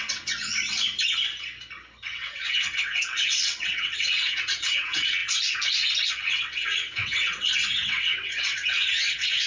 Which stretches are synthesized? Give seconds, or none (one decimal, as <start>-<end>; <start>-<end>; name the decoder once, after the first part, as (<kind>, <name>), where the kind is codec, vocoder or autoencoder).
0.0-0.5 (vocoder, WaveNeXt); 2.1-5.2; 6.1-9.5